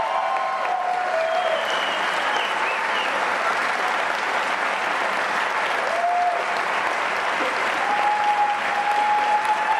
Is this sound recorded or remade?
recorded